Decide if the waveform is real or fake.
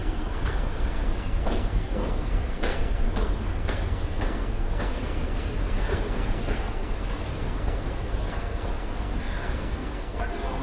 fake